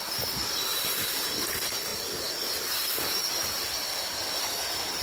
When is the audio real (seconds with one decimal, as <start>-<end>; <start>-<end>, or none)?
0.0-5.0